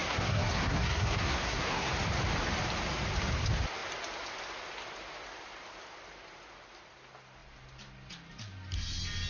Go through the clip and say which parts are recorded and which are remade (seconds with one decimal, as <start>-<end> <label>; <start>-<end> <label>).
0.0-1.9 remade; 1.9-9.3 recorded